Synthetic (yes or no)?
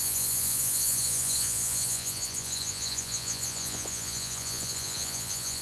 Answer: yes